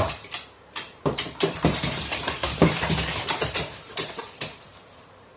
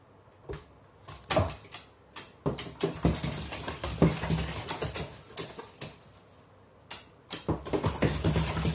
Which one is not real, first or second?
first